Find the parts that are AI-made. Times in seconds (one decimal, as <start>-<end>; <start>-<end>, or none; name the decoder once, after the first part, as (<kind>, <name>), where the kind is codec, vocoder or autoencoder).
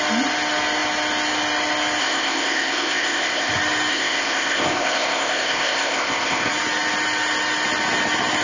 2.0-3.5 (codec, ZipCodec); 3.9-6.5